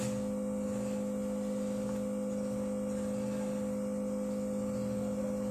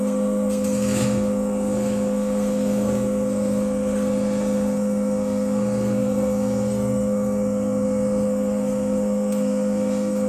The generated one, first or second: second